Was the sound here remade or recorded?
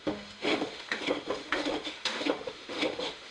remade